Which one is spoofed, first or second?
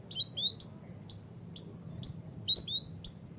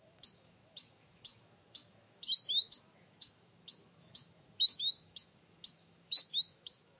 second